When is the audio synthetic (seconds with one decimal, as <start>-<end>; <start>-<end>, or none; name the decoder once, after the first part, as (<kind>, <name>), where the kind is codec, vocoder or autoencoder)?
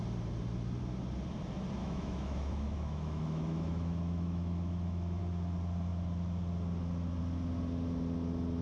1.8-5.2 (autoencoder, DAC-VAE)